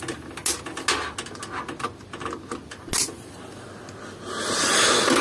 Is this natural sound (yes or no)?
yes